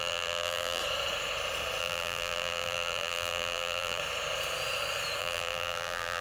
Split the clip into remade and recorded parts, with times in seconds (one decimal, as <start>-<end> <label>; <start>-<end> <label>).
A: 0.0-0.8 remade; 0.8-1.8 recorded; 1.8-4.0 remade; 4.0-5.2 recorded; 5.2-6.2 remade